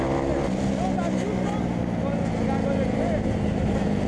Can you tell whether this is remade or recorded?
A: recorded